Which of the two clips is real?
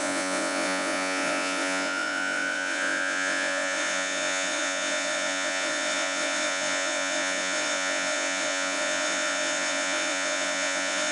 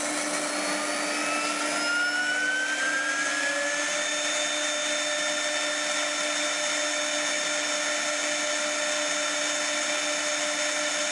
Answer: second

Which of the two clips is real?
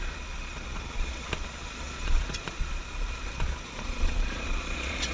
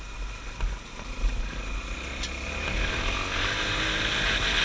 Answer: second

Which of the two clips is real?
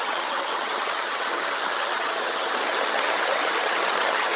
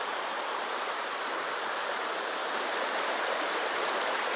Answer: second